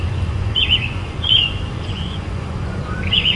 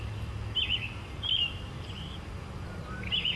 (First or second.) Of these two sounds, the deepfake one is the first